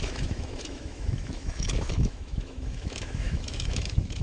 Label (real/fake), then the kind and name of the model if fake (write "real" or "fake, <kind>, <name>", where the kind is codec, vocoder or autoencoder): fake, autoencoder, DAC-VAE